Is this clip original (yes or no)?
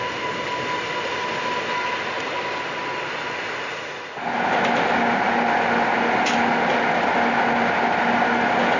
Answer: yes